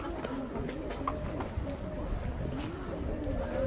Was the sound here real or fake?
real